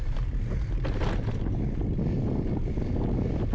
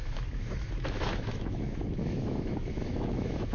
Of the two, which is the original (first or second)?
first